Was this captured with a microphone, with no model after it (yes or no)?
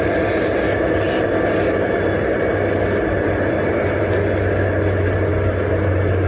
yes